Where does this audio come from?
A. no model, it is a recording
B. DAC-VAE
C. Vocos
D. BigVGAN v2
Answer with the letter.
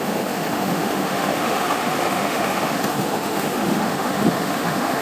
B